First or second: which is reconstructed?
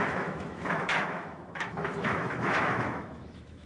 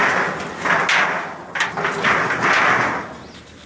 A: first